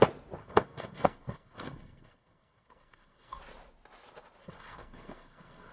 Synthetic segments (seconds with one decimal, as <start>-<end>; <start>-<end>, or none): 0.4-3.4; 4.4-5.7